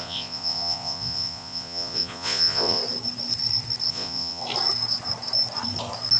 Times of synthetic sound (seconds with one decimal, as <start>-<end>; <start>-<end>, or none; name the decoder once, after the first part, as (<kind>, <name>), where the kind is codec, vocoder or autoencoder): 0.0-2.8 (vocoder, Vocos); 3.9-4.4